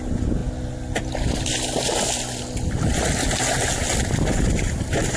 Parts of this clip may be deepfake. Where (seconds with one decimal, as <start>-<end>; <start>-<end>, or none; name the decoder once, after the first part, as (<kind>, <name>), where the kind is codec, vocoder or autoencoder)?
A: none